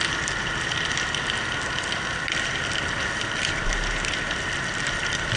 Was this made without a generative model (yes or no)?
yes